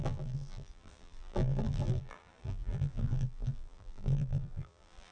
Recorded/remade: remade